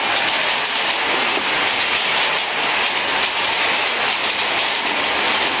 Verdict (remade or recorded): recorded